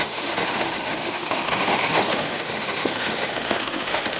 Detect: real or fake fake